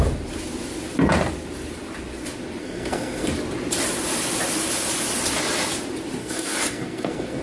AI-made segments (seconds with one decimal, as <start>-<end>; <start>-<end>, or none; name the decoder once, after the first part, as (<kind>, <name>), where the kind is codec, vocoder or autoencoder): 2.6-3.3 (codec, SNAC); 6.2-7.4